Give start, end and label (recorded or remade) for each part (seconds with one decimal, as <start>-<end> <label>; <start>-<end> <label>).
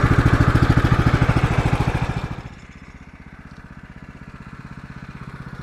0.0-5.6 recorded